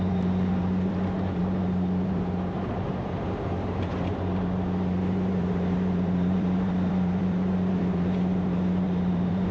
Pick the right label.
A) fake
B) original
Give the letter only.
A